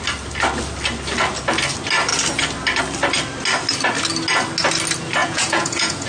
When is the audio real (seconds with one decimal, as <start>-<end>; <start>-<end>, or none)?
0.0-5.2